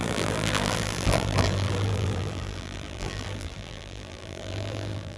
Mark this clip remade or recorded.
remade